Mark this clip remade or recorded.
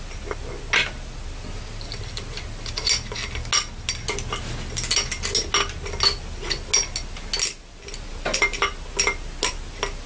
recorded